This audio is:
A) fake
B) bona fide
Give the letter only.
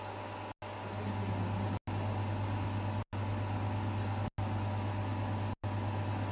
B